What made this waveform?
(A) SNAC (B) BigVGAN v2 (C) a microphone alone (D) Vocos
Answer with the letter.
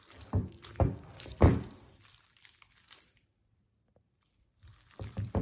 B